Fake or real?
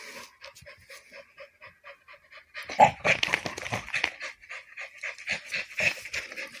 real